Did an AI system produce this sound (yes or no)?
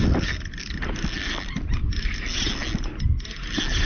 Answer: no